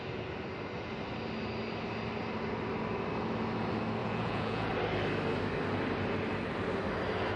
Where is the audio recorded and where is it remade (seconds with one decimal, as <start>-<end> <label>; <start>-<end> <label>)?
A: 0.0-4.0 recorded; 4.0-4.7 remade; 4.7-7.4 recorded